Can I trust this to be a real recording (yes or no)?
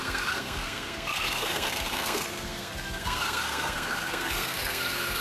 no